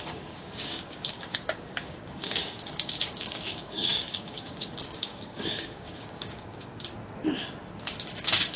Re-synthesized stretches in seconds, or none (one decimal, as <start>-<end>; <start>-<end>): 0.0-6.9; 8.2-8.6